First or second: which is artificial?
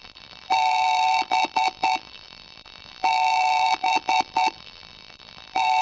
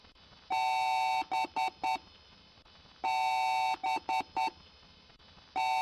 first